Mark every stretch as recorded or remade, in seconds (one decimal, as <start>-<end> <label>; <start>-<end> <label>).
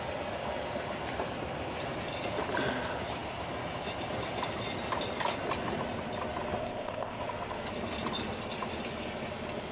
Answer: 0.0-6.6 recorded; 6.6-7.2 remade; 7.2-9.7 recorded